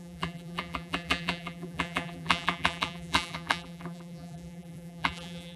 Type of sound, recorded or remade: remade